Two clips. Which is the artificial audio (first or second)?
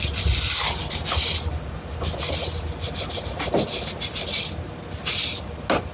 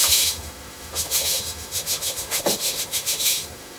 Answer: second